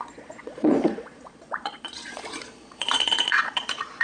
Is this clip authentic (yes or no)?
no